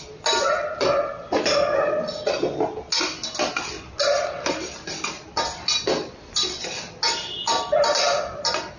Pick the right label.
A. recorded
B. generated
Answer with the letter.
A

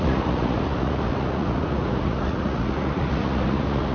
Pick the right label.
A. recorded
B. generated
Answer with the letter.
B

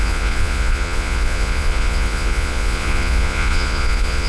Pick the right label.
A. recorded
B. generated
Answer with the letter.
B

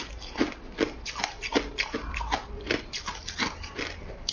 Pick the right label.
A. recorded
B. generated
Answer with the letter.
A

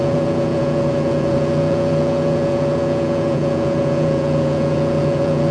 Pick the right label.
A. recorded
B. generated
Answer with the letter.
B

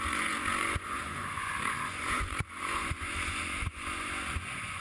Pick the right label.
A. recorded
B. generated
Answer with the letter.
B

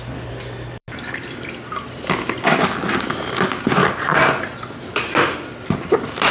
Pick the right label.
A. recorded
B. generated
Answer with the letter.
A